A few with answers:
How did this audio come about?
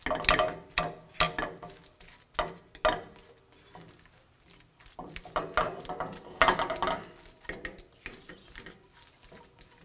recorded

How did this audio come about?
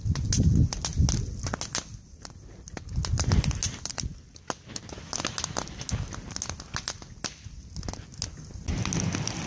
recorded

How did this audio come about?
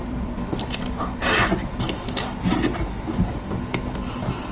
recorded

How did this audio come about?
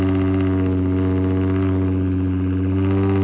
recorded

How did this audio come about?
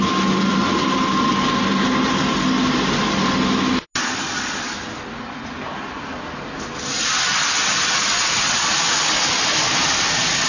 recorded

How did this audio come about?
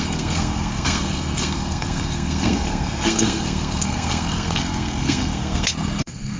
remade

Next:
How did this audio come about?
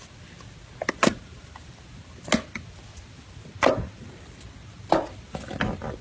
recorded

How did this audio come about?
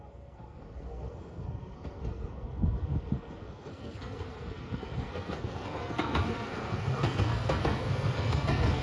remade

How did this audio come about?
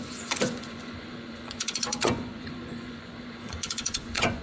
remade